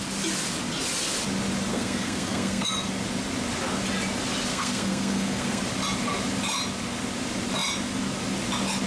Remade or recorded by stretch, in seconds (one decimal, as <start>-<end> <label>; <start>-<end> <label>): 0.0-1.7 recorded; 1.7-2.7 remade; 2.7-4.5 recorded; 4.5-5.6 remade; 5.6-8.9 recorded